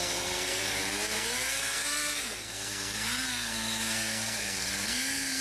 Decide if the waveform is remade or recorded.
remade